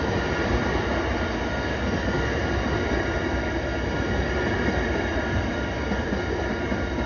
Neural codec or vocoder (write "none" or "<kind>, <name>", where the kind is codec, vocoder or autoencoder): none